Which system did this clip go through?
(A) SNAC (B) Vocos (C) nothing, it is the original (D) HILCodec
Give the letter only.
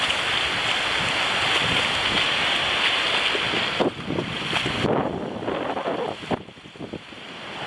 C